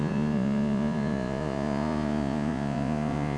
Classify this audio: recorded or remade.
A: remade